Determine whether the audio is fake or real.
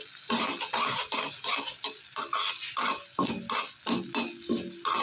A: real